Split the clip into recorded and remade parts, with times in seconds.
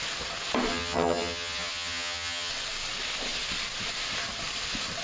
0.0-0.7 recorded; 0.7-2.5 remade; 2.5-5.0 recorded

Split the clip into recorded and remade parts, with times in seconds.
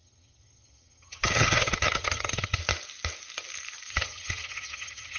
0.0-2.6 remade; 2.6-3.9 recorded; 3.9-5.2 remade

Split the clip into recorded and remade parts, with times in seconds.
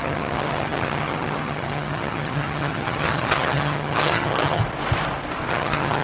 0.0-4.6 remade; 4.6-5.5 recorded; 5.5-6.0 remade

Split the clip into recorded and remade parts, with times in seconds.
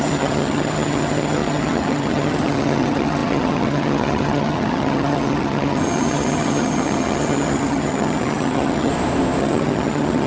0.0-8.9 remade; 8.9-9.4 recorded; 9.4-10.3 remade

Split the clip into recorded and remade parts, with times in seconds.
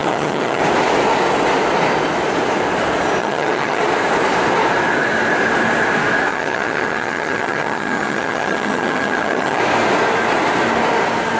0.0-0.6 remade; 0.6-3.2 recorded; 3.2-3.8 remade; 3.8-6.3 recorded; 6.3-9.6 remade; 9.6-11.4 recorded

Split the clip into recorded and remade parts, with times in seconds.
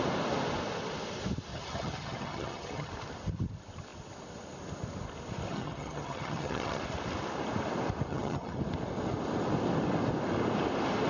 0.0-1.5 recorded; 1.5-2.9 remade; 2.9-5.5 recorded; 5.5-6.8 remade; 6.8-8.1 recorded; 8.1-8.6 remade; 8.6-11.1 recorded